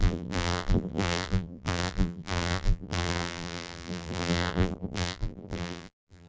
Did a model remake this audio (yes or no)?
yes